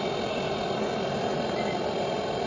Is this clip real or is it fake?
real